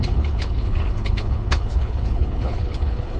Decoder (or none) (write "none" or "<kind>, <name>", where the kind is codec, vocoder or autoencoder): codec, HILCodec